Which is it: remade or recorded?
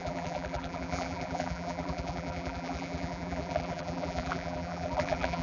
remade